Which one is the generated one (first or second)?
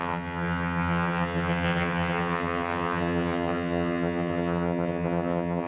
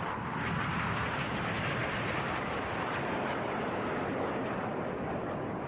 first